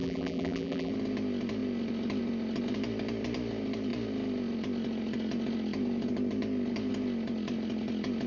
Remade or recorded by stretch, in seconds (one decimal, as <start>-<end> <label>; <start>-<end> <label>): 0.0-0.9 remade; 0.9-8.3 recorded